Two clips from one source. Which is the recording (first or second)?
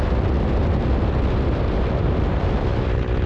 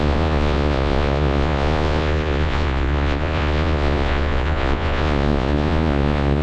first